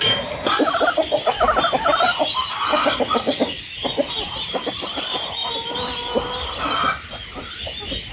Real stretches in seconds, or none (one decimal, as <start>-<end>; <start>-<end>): 0.0-2.7; 3.6-8.1